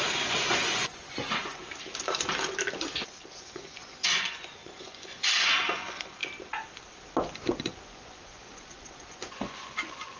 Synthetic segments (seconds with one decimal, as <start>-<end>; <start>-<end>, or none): 0.0-1.6; 3.4-6.2; 7.2-10.2